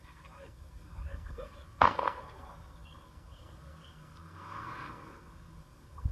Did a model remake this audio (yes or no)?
yes